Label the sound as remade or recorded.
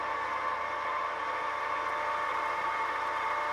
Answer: recorded